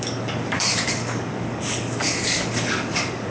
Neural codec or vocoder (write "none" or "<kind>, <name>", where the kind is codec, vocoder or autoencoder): codec, DAC